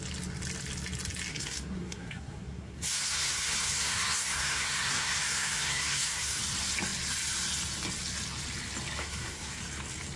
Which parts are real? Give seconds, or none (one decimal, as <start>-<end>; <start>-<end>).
0.0-1.3; 6.4-9.0; 9.6-10.2